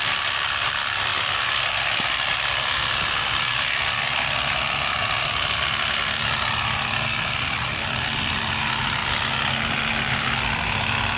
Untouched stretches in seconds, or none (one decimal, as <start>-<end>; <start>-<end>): 0.0-11.2